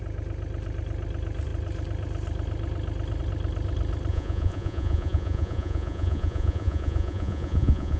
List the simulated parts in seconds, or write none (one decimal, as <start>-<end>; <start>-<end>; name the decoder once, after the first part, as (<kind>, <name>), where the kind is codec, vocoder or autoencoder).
4.1-8.0 (vocoder, Vocos)